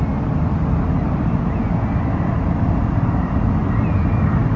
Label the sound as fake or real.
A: real